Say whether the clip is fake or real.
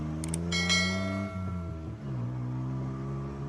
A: real